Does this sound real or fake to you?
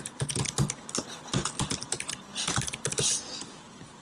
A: real